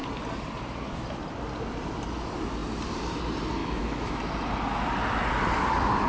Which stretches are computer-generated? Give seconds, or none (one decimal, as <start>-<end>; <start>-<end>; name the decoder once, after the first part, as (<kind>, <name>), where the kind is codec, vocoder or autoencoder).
3.6-4.2 (autoencoder, DAC-VAE)